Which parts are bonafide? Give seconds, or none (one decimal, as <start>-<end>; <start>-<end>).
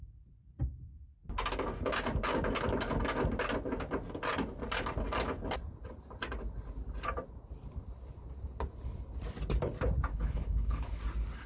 0.0-10.1; 11.0-11.5